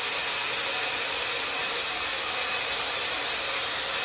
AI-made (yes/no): no